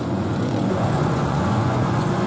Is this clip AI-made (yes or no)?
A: yes